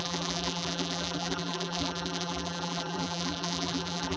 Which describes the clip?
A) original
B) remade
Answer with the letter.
B